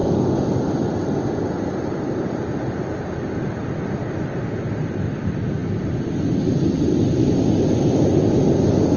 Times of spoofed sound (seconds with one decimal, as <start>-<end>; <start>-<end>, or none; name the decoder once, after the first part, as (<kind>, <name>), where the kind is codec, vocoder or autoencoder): none